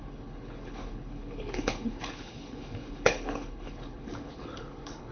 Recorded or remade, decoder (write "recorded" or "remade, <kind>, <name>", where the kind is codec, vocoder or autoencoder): remade, codec, HILCodec